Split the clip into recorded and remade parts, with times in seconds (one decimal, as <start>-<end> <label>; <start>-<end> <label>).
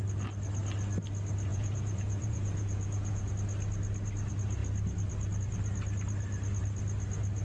0.0-1.5 recorded; 1.5-3.3 remade; 3.3-7.4 recorded